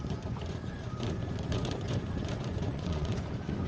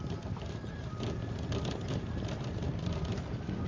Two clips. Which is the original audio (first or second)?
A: second